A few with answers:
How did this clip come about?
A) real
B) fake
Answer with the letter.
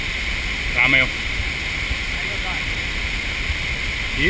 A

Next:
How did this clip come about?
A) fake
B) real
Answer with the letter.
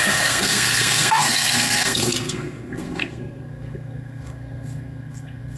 A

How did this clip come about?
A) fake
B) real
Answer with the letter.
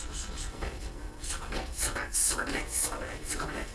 A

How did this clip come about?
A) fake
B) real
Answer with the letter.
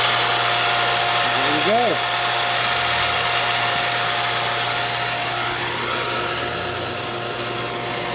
B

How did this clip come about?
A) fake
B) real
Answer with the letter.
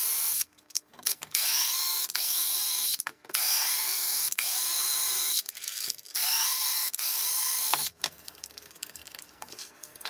A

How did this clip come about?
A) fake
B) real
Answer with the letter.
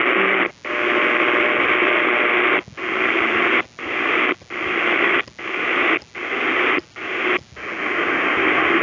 B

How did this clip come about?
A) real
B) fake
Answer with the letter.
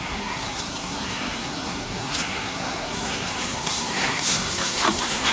B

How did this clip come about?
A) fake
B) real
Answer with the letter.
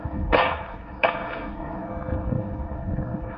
A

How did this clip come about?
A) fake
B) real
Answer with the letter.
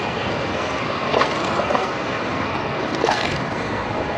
A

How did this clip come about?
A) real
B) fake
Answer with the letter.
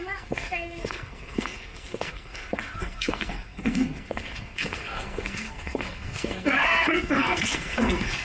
B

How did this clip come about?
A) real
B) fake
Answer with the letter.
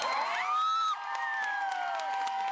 A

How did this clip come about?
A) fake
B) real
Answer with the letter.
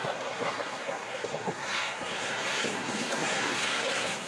A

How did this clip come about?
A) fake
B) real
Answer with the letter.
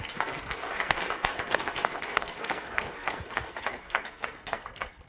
A